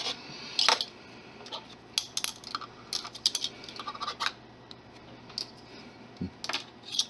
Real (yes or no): yes